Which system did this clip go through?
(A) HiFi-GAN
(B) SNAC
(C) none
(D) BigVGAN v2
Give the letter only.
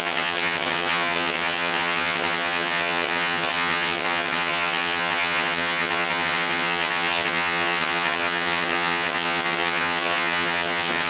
A